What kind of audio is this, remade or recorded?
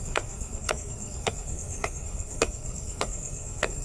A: remade